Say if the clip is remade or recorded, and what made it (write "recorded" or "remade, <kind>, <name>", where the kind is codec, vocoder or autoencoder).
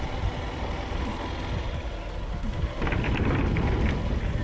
recorded